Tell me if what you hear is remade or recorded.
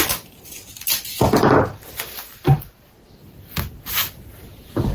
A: recorded